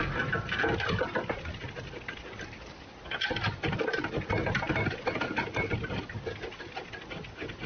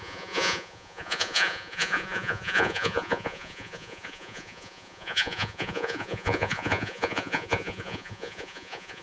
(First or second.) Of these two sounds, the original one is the first